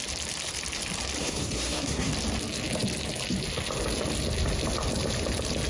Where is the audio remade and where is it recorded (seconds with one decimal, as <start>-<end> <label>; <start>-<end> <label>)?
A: 0.0-1.2 recorded; 1.2-2.1 remade; 2.1-5.7 recorded

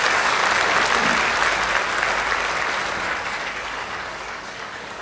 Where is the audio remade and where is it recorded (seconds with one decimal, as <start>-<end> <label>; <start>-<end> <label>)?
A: 0.0-0.4 remade; 0.4-3.0 recorded; 3.0-5.0 remade

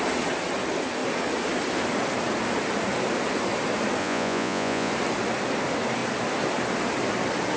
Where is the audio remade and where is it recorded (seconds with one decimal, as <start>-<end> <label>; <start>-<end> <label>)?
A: 0.0-4.0 recorded; 4.0-4.9 remade; 4.9-7.6 recorded

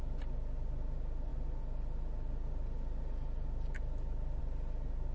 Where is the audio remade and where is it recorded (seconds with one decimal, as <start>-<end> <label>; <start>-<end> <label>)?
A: 0.0-5.1 recorded

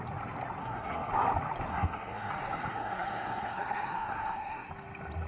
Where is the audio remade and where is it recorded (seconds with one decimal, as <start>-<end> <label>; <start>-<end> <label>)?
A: 0.0-0.6 recorded; 0.6-1.1 remade; 1.1-1.7 recorded; 1.7-2.3 remade; 2.3-2.7 recorded; 2.7-4.7 remade; 4.7-5.3 recorded